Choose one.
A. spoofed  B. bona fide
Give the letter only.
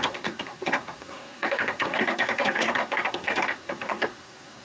A